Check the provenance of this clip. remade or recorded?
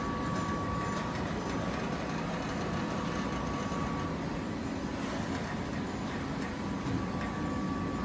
recorded